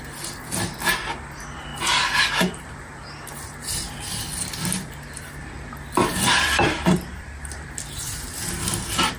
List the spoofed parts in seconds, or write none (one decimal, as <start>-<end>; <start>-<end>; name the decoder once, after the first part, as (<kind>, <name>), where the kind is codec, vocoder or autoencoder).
0.0-1.7 (vocoder, BigVGAN v2); 2.3-9.2